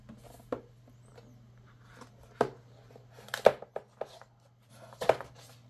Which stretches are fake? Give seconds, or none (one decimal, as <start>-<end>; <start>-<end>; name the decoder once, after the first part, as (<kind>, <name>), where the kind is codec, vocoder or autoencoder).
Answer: none